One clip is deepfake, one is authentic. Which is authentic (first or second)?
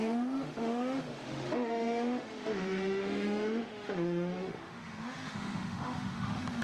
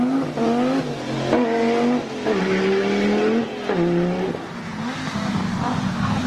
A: second